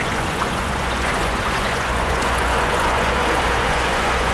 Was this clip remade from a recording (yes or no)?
yes